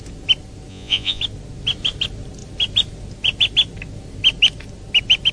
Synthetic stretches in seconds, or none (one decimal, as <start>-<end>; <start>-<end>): 0.7-1.2